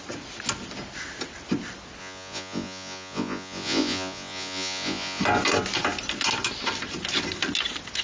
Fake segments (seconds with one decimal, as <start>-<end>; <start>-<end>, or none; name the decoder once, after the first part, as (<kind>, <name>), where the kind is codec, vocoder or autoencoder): 2.0-5.2 (vocoder, Vocos)